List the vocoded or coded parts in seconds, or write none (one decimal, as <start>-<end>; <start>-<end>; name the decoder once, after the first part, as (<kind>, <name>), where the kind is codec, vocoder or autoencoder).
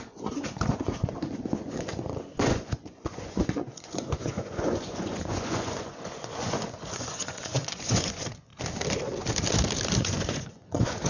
0.0-8.5 (vocoder, Vocos); 10.0-11.1